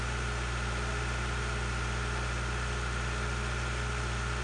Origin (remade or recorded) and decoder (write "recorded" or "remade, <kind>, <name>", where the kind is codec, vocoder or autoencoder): recorded